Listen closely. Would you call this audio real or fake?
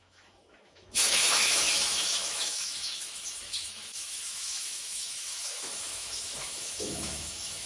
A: fake